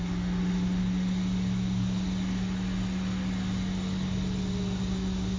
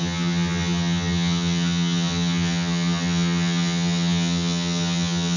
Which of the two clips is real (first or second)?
first